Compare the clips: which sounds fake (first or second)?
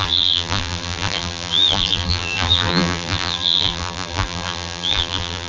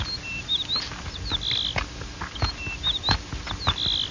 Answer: first